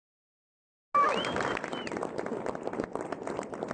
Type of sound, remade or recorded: recorded